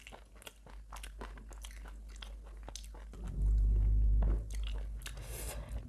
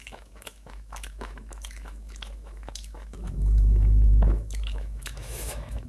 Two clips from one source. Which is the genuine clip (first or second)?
first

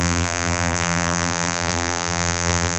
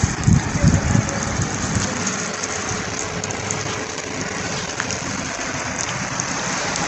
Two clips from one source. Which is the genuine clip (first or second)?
second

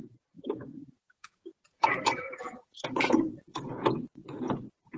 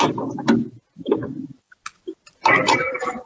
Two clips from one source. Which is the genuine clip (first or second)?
second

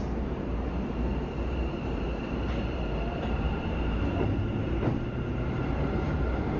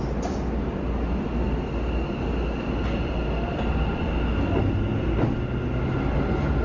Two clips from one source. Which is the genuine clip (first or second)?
second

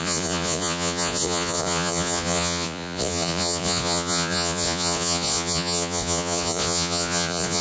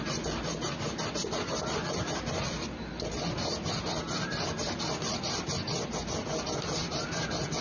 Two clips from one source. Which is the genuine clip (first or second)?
second